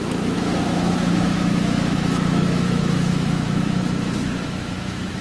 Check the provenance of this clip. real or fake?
fake